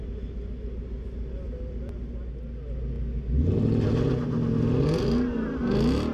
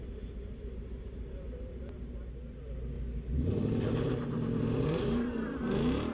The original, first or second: first